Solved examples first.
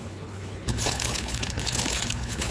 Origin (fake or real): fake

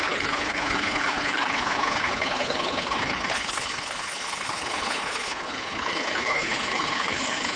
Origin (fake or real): fake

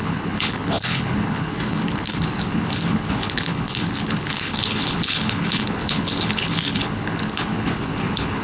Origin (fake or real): fake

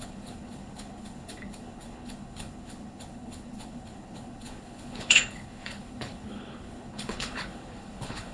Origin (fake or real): fake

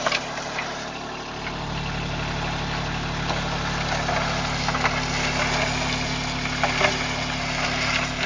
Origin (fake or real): real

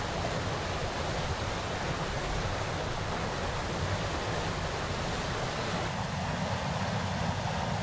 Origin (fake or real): real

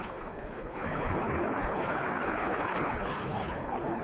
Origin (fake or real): fake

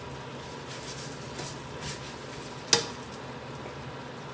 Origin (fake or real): real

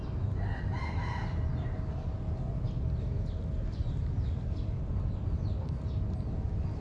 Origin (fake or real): real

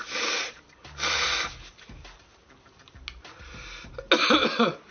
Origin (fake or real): real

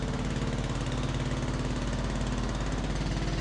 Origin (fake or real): real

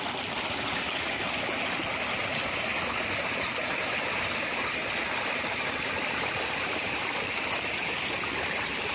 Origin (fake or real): real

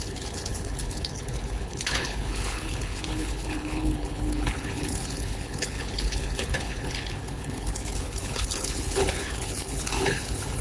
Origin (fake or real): fake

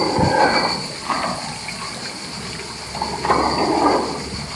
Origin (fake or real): real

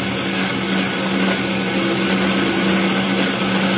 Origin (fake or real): real